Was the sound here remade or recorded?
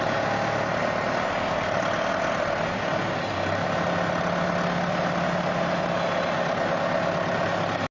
recorded